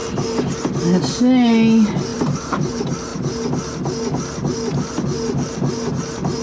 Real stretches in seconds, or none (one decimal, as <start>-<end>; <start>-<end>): 0.0-2.1; 2.7-6.4